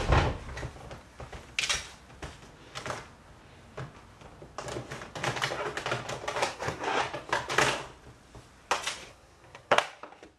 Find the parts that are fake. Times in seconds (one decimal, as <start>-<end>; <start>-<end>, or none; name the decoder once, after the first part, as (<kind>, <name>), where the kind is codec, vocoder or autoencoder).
6.4-7.0 (codec, SNAC); 9.1-9.8